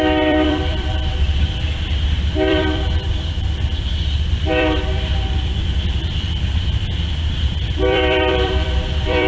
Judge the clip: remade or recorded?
remade